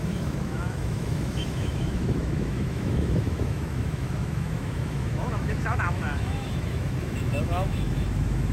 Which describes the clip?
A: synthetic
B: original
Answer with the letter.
A